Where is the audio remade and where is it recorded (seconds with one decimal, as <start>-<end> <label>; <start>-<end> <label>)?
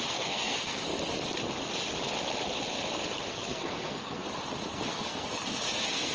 0.0-0.9 remade; 0.9-3.3 recorded; 3.3-4.2 remade; 4.2-4.7 recorded; 4.7-6.1 remade